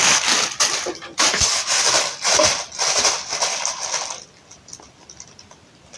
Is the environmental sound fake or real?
real